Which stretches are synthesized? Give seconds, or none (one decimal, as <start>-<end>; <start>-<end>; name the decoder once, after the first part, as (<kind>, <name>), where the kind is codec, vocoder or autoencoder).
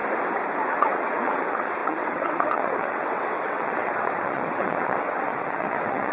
0.7-6.1 (vocoder, WaveNeXt)